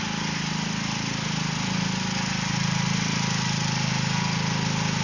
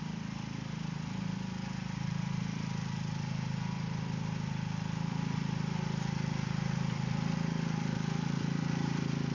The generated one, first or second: second